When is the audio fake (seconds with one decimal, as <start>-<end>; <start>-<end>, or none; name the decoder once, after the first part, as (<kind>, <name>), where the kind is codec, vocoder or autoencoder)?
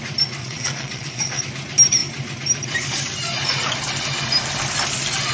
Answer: 0.4-1.4 (vocoder, WaveNeXt)